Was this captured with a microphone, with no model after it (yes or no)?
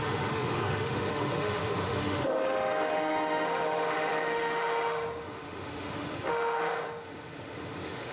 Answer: no